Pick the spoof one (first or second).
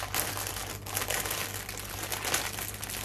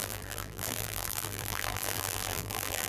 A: second